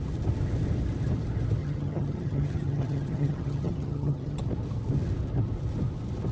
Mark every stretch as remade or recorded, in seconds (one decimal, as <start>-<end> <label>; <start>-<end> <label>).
0.0-1.6 recorded; 1.6-4.4 remade; 4.4-6.3 recorded

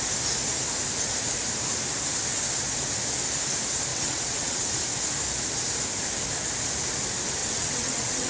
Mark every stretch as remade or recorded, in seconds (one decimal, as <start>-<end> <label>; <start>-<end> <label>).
0.0-3.9 recorded; 3.9-4.7 remade; 4.7-7.4 recorded; 7.4-8.3 remade

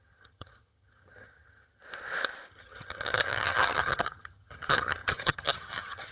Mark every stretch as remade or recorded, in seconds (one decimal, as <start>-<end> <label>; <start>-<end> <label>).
0.0-1.8 remade; 1.8-2.5 recorded; 2.5-6.1 remade

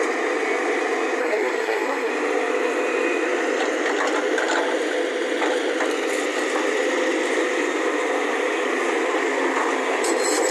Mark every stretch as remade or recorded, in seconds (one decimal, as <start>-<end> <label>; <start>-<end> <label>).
0.0-1.2 recorded; 1.2-2.1 remade; 2.1-10.5 recorded

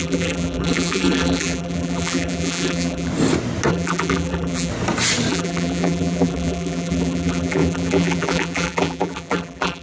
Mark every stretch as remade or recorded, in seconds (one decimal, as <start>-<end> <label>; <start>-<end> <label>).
0.0-3.1 remade; 3.1-3.7 recorded; 3.7-4.7 remade; 4.7-5.3 recorded; 5.3-9.8 remade

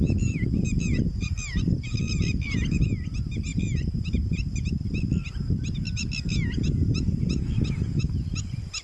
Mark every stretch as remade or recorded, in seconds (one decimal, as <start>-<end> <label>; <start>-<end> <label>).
0.0-8.8 recorded

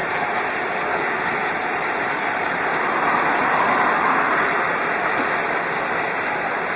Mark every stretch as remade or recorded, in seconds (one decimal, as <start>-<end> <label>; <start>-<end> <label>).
0.0-0.6 remade; 0.6-1.4 recorded; 1.4-3.4 remade; 3.4-6.8 recorded